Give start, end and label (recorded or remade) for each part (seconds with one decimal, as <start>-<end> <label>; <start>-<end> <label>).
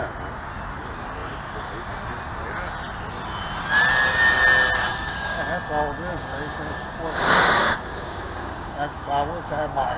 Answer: 0.0-4.9 recorded; 4.9-5.4 remade; 5.4-6.1 recorded; 6.1-10.0 remade